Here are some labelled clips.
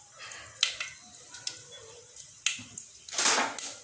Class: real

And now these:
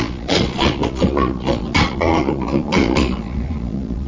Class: fake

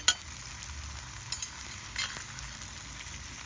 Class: real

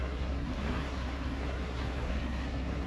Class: fake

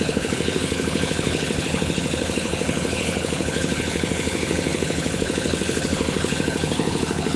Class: fake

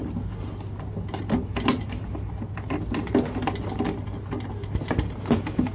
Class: real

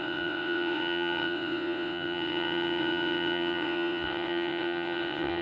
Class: fake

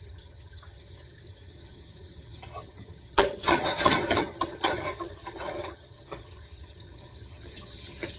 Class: fake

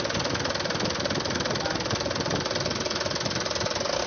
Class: real